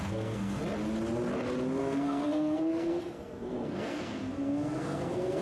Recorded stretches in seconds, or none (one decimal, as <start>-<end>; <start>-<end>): 0.6-1.8